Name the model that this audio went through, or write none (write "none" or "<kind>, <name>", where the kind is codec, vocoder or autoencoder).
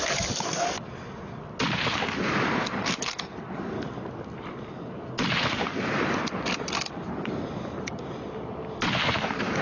none